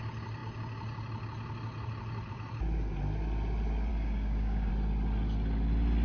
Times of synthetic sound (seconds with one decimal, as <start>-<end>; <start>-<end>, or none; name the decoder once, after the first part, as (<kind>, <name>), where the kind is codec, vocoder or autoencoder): 3.9-4.7 (codec, DAC)